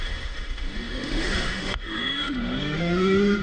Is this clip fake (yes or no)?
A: yes